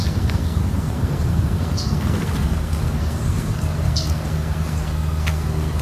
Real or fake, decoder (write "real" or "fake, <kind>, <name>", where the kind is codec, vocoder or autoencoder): fake, codec, SNAC